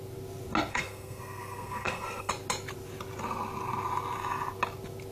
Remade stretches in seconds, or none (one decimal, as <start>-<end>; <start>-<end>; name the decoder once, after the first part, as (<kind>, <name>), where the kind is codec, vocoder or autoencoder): 0.7-2.3 (codec, SNAC)